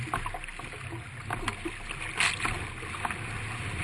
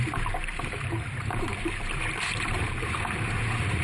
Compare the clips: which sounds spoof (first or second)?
second